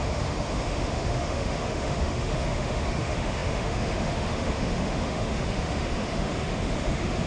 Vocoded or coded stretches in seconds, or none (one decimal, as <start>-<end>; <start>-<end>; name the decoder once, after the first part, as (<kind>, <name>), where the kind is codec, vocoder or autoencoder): 0.0-7.3 (autoencoder, DAC-VAE)